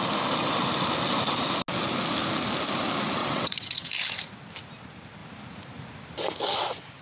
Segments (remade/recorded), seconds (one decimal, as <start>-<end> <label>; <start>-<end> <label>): 0.0-3.2 recorded; 3.2-3.9 remade; 3.9-7.0 recorded